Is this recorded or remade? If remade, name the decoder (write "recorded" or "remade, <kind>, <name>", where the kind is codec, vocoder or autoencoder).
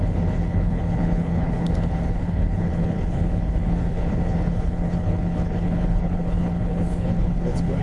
remade, codec, HILCodec